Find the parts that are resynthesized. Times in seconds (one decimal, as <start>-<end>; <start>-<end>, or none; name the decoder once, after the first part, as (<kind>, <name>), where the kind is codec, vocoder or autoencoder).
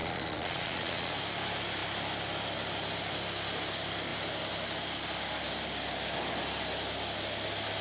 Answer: 0.0-1.1 (vocoder, Vocos)